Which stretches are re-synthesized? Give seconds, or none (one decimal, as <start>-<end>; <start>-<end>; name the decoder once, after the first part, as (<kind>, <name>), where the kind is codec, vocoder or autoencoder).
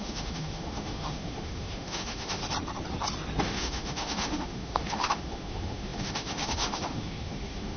0.0-2.4 (autoencoder, DAC-VAE); 3.4-7.8